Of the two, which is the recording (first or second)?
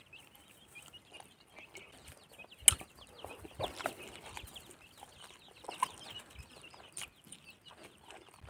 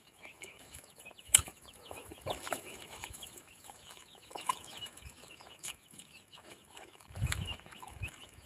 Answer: first